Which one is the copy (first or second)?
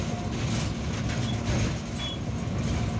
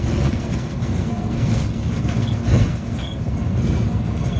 second